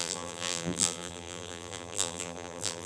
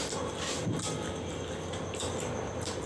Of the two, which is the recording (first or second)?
second